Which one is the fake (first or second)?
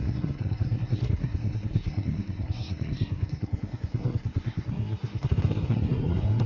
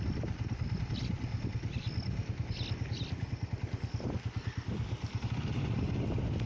first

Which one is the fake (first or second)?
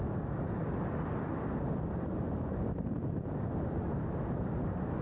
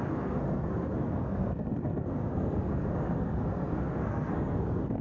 second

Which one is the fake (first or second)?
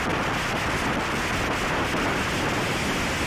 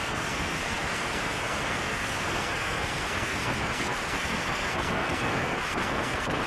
second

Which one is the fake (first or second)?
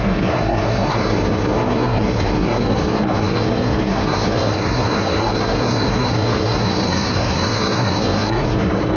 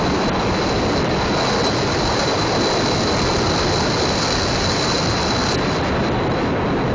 first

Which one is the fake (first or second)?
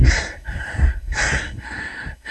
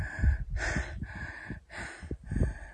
first